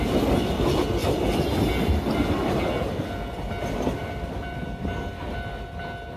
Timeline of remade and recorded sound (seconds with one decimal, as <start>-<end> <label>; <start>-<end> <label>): 0.0-1.0 recorded; 1.0-1.5 remade; 1.5-4.0 recorded; 4.0-4.6 remade; 4.6-6.2 recorded